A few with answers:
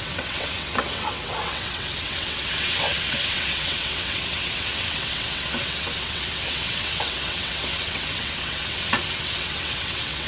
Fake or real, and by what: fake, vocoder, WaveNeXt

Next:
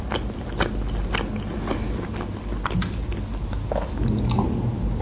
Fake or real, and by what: real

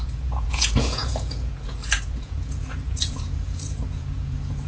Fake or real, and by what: fake, vocoder, Vocos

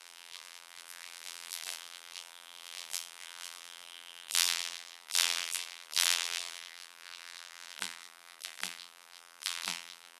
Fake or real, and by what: fake, vocoder, BigVGAN v2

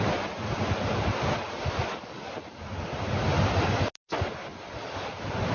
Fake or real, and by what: real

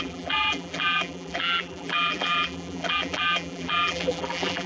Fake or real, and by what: fake, vocoder, BigVGAN v2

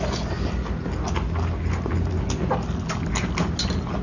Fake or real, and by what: real